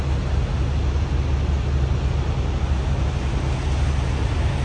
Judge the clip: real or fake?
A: real